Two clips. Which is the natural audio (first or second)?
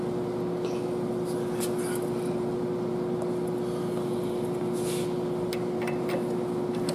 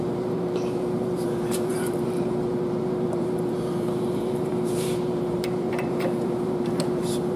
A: first